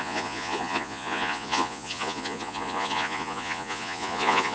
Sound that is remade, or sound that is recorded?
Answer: remade